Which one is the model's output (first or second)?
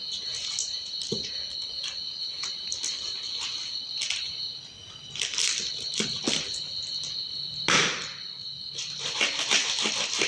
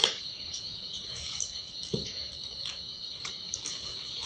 second